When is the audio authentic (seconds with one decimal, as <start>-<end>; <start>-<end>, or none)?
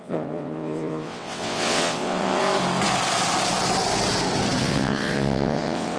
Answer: 2.4-4.6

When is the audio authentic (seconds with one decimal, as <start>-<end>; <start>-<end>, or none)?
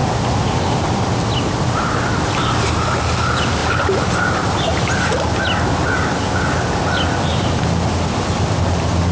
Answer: 0.0-9.1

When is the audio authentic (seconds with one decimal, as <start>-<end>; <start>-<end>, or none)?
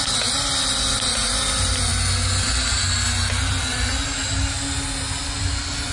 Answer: 0.0-5.9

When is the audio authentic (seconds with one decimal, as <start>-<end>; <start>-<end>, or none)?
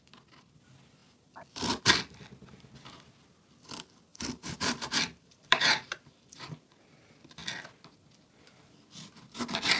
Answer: 0.0-4.1; 6.4-9.8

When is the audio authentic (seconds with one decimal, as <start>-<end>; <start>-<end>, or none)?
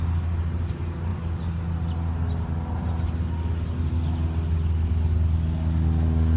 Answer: 0.0-6.4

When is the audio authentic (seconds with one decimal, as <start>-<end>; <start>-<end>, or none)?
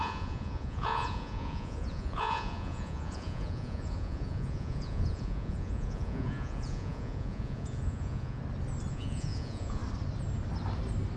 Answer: 8.4-8.9; 9.8-11.2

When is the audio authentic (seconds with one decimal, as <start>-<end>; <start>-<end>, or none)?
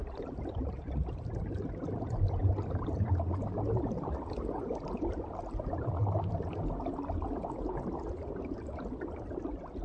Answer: 0.6-9.8